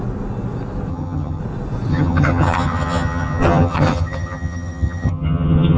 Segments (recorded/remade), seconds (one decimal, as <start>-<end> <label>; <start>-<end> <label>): 0.0-0.9 recorded; 0.9-1.4 remade; 1.4-1.9 recorded; 1.9-5.8 remade